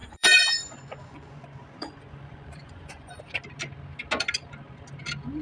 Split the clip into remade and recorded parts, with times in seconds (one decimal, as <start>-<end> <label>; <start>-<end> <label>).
0.0-3.2 remade; 3.2-5.4 recorded